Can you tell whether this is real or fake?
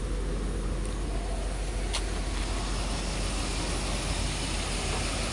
real